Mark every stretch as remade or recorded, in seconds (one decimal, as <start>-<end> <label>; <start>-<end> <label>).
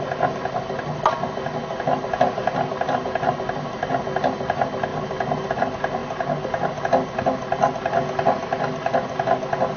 0.0-9.8 recorded